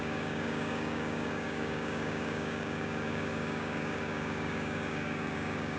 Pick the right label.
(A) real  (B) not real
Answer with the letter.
B